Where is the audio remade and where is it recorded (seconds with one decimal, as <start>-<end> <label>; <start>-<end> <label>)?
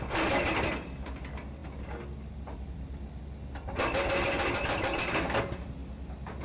0.0-6.4 recorded